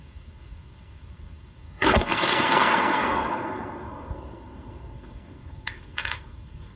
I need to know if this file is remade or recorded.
remade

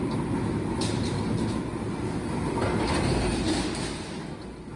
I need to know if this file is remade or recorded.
recorded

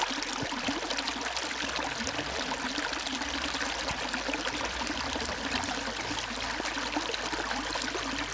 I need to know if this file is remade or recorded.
recorded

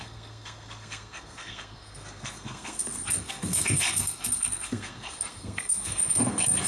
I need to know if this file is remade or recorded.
remade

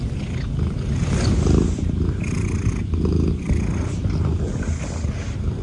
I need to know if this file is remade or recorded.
recorded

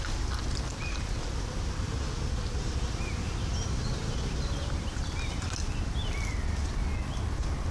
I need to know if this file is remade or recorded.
recorded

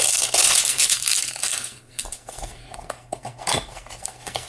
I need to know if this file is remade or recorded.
remade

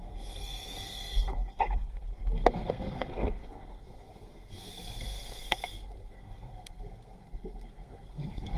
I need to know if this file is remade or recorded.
remade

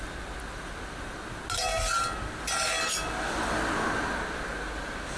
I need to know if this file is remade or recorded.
recorded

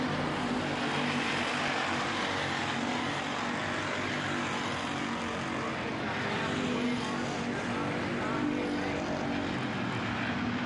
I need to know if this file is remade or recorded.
recorded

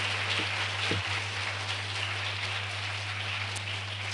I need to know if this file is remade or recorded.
recorded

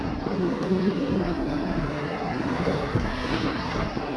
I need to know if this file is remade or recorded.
remade